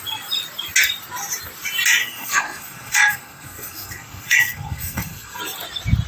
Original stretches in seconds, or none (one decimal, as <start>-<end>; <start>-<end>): 0.0-2.0; 5.4-6.1